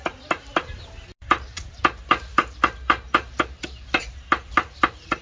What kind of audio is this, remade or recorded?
recorded